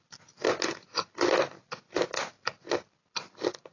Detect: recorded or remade recorded